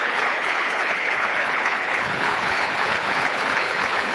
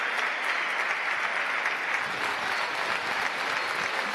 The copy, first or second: first